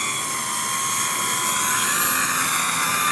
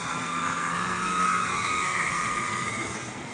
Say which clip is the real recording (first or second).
first